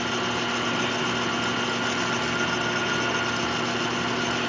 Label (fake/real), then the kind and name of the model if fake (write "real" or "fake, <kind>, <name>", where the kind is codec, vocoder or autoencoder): real